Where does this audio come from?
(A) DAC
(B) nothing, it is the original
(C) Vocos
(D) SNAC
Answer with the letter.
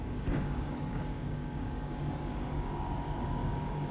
A